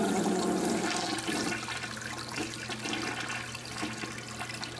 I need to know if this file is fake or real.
real